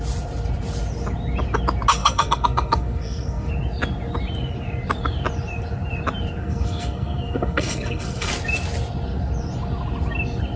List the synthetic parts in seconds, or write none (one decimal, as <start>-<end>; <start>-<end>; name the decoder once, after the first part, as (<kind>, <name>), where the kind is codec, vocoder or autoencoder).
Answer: 2.0-3.5 (codec, SNAC); 6.4-8.3